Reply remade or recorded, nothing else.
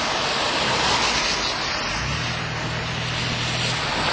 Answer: recorded